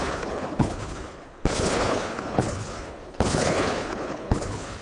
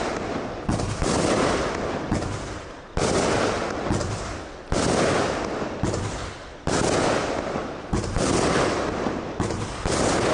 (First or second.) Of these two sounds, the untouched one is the second